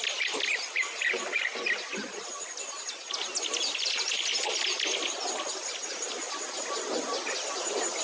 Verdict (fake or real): real